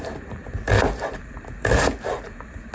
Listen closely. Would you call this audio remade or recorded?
recorded